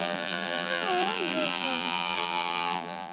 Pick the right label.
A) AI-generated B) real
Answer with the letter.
A